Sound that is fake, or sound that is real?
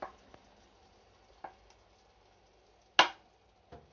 real